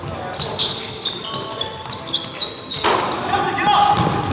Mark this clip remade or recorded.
recorded